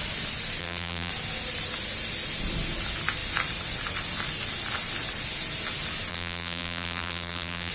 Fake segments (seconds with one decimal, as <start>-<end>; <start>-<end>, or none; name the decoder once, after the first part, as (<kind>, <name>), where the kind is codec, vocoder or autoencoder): 0.6-1.1 (vocoder, BigVGAN v2); 6.1-7.7